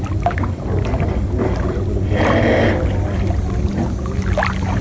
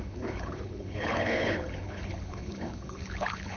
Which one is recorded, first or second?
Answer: first